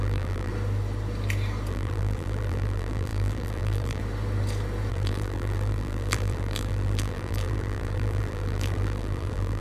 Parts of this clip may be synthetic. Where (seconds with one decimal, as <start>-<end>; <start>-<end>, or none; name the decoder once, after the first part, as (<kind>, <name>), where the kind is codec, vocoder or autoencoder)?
0.0-0.5 (vocoder, BigVGAN v2); 1.7-4.0; 4.9-9.6